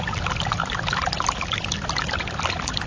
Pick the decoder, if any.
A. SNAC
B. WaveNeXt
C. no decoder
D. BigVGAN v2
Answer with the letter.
D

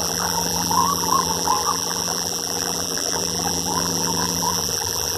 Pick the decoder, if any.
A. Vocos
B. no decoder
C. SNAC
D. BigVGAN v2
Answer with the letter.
D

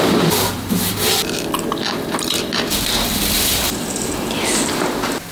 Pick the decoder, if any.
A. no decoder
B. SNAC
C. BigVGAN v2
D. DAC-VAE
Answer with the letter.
C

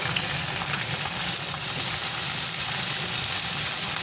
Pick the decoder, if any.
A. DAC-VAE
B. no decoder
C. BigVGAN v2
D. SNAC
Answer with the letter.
C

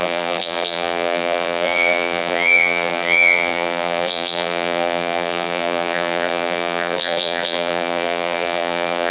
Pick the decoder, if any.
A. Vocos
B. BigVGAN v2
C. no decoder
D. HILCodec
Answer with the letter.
B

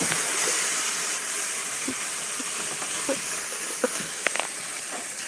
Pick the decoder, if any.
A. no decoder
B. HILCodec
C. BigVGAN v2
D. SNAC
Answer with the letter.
C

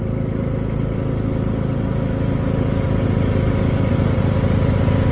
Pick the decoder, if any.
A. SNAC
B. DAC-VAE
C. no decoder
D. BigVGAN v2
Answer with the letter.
C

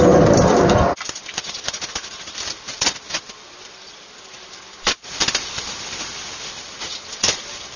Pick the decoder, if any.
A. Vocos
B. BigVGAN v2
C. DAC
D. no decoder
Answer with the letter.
B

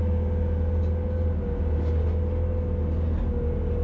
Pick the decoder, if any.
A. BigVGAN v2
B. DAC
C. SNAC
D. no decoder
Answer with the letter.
D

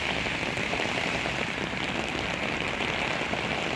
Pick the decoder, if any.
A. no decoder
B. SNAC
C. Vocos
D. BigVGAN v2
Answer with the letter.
A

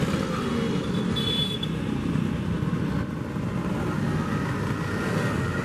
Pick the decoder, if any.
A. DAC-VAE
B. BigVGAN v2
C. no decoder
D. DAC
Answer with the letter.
C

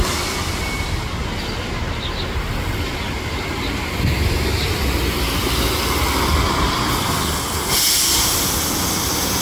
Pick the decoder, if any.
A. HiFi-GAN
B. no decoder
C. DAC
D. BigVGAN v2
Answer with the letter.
B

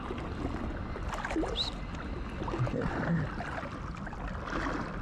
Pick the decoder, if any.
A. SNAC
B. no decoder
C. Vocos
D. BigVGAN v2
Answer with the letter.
B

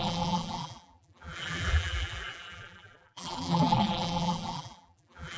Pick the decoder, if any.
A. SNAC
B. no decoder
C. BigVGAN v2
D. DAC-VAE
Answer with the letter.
C